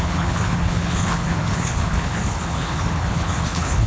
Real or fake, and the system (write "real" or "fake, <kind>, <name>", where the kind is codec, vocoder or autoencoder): fake, codec, HILCodec